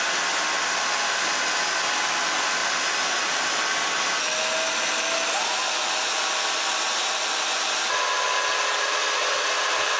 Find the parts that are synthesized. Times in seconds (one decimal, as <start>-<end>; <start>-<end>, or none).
none